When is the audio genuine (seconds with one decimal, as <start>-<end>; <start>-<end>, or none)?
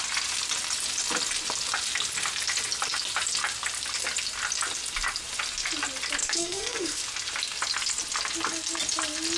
0.0-6.2; 7.0-9.4